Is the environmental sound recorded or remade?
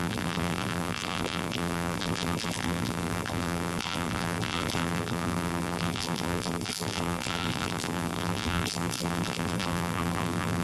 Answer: remade